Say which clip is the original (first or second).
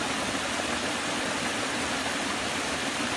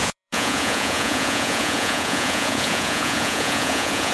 first